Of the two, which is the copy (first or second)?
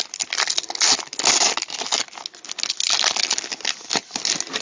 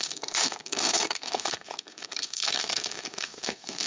second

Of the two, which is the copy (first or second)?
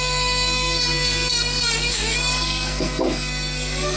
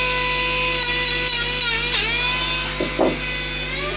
first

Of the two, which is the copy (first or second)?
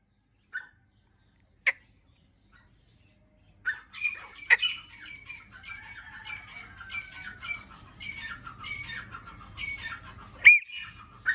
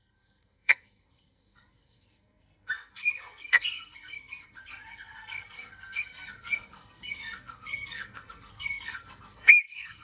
second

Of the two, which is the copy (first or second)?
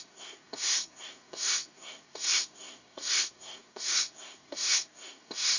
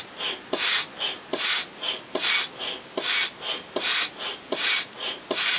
first